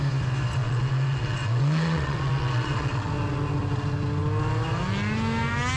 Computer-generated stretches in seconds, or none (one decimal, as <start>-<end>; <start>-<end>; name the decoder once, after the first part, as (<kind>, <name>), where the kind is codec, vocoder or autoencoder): 0.6-3.1 (vocoder, WaveNeXt)